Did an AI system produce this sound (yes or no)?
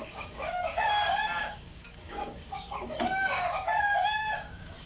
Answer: yes